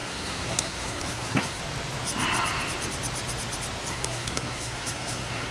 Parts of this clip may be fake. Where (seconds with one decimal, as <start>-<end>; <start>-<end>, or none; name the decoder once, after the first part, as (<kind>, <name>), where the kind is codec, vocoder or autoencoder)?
0.0-1.6 (codec, SNAC); 3.9-5.5